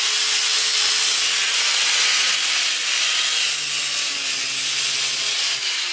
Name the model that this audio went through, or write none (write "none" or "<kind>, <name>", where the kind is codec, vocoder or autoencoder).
none